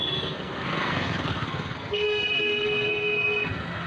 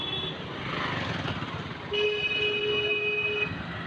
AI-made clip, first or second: first